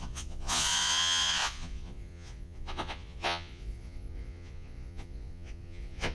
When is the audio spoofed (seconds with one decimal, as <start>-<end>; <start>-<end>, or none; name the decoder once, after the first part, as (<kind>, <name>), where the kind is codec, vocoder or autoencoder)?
0.0-6.1 (vocoder, Vocos)